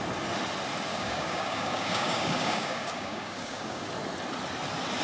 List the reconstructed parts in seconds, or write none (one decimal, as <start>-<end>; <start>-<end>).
0.9-3.9